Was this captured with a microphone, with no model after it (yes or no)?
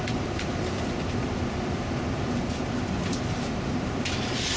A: no